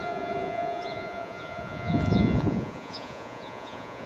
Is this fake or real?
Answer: fake